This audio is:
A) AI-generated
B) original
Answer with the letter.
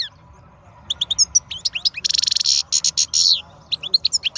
B